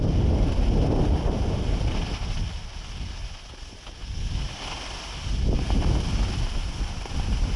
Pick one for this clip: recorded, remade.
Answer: recorded